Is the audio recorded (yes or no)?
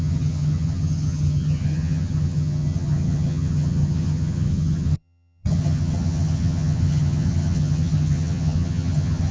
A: no